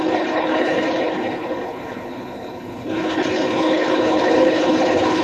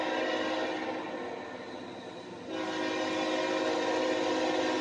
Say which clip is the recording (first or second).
second